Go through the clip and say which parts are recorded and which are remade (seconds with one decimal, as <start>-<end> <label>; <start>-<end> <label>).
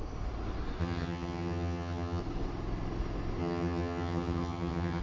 0.0-0.8 recorded; 0.8-2.2 remade; 2.2-3.4 recorded; 3.4-5.0 remade